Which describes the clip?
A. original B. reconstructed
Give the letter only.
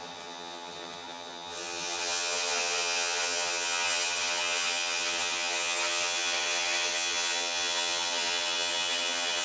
B